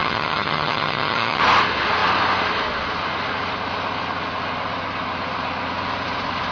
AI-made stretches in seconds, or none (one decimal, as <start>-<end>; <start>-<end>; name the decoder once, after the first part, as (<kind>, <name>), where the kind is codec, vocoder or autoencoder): 0.0-1.4 (vocoder, HiFi-GAN)